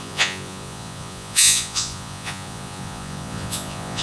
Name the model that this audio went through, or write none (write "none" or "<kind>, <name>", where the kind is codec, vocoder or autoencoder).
vocoder, Vocos